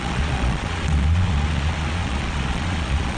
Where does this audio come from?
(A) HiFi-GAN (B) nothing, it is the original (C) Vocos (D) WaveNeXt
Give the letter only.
C